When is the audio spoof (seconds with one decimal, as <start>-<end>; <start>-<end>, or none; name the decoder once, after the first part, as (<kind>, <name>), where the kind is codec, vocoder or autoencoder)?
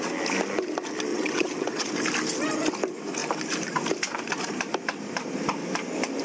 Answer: 1.1-1.9 (vocoder, WaveNeXt)